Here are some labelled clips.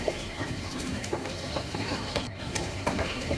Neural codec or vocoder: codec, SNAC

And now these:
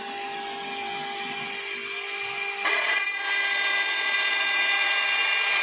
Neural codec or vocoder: none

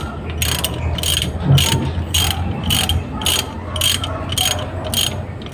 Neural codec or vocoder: none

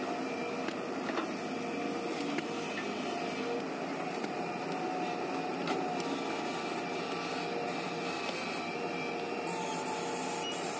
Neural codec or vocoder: none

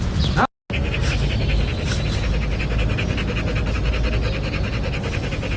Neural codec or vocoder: none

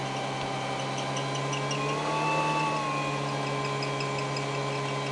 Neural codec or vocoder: none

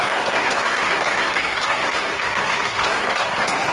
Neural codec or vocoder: codec, SNAC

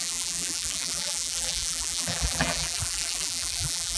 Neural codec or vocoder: vocoder, BigVGAN v2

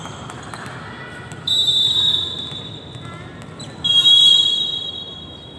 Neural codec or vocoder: none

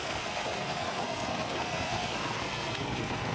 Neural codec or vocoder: codec, SNAC